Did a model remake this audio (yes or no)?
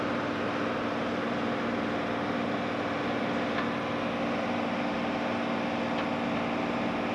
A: no